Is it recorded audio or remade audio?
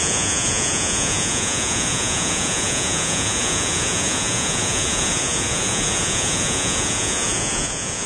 remade